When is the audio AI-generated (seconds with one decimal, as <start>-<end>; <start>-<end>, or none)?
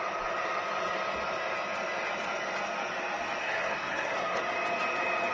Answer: 3.4-4.4